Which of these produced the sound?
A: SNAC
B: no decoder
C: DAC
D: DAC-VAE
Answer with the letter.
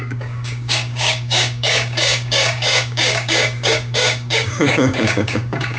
C